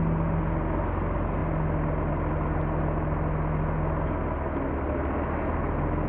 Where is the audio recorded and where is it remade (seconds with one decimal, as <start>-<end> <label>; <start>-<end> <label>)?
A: 0.0-6.1 recorded